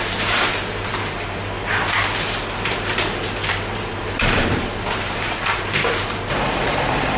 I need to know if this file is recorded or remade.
remade